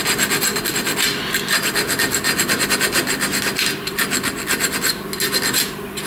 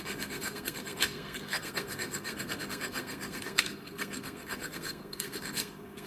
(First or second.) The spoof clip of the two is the second